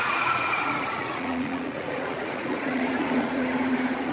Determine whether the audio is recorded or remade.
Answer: remade